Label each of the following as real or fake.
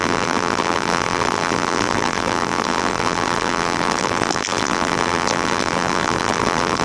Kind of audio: fake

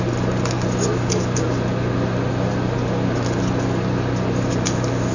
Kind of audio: real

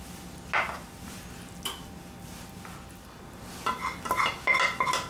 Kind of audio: real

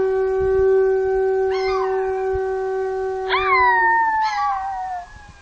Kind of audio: real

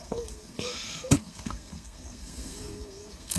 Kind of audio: fake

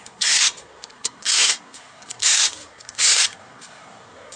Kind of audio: fake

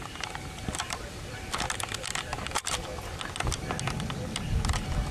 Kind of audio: real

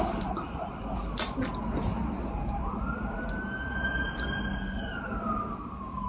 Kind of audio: real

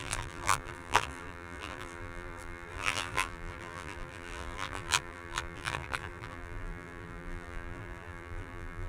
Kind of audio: fake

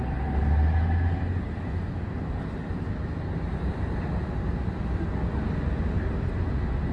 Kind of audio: real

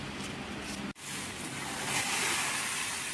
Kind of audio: real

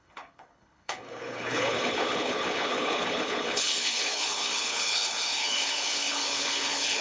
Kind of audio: fake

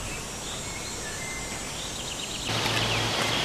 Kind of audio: real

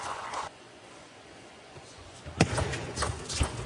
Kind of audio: fake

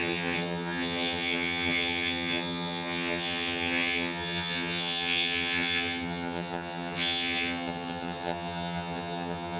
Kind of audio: fake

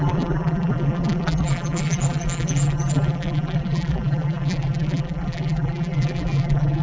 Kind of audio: fake